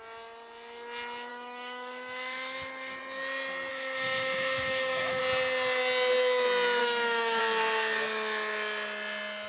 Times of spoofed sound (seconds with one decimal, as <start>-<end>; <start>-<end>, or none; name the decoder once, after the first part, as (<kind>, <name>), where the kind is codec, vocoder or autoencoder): 1.3-3.0 (autoencoder, DAC-VAE); 3.7-5.2; 6.8-7.4